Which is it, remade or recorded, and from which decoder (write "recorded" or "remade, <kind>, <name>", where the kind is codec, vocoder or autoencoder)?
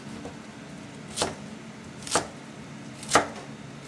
recorded